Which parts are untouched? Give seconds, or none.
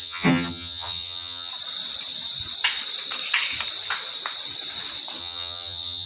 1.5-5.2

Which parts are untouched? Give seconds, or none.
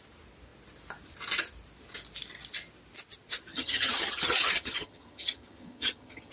0.0-3.5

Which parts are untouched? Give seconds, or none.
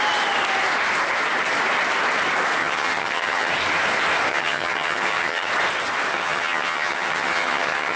0.0-2.6; 3.5-4.3; 5.5-6.1